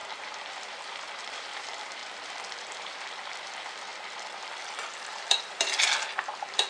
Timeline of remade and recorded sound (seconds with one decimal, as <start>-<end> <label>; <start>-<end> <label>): 0.0-2.0 remade; 2.0-2.5 recorded; 2.5-6.7 remade